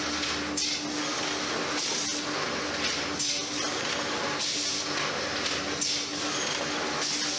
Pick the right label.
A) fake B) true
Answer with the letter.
B